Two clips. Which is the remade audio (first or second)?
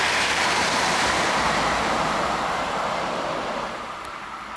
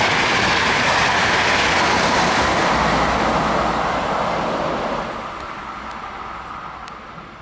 first